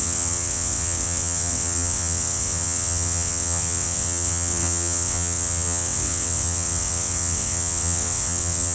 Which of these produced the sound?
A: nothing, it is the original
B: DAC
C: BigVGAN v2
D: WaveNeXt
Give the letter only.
D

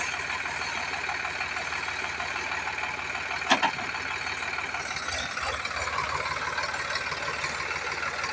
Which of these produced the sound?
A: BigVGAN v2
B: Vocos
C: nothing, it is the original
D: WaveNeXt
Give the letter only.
C